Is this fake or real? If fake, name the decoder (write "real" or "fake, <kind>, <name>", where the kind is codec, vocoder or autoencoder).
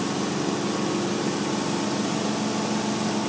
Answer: real